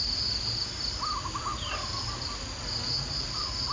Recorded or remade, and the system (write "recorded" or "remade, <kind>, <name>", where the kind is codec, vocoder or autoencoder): recorded